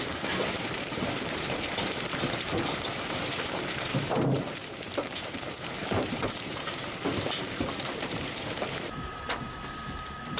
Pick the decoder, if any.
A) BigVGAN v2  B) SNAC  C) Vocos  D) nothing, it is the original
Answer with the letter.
A